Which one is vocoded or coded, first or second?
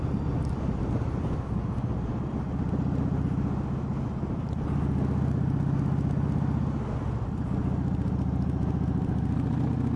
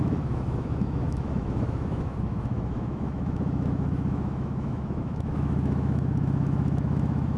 second